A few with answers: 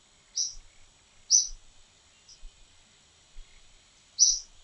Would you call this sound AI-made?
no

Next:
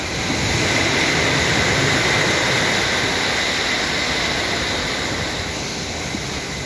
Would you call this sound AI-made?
no